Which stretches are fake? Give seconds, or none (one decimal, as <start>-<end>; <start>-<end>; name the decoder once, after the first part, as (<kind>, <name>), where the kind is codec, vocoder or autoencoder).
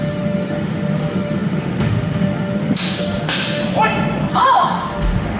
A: 0.0-3.6 (autoencoder, DAC-VAE); 4.3-5.4